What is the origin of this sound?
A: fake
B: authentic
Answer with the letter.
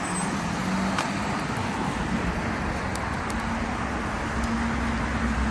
B